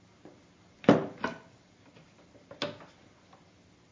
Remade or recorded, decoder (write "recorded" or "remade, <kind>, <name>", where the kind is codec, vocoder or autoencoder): recorded